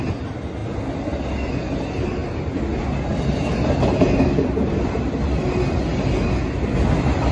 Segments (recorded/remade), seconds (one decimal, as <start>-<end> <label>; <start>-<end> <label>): 0.0-7.3 recorded